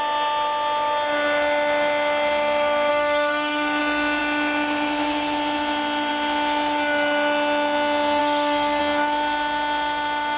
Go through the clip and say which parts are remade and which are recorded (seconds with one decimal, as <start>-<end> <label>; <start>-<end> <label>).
0.0-2.9 recorded; 2.9-3.8 remade; 3.8-8.2 recorded; 8.2-8.8 remade; 8.8-10.4 recorded